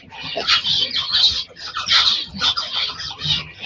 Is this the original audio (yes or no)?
no